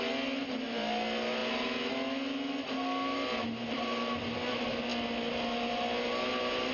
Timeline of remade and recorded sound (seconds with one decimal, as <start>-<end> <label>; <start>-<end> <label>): 0.0-6.7 recorded